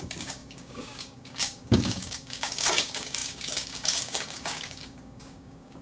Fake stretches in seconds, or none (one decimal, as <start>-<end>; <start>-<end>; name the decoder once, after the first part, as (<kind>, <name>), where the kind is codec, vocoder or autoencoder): 0.0-5.8 (codec, DAC)